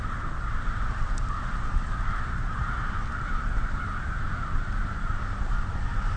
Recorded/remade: recorded